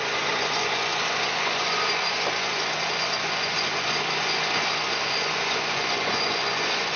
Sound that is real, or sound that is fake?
fake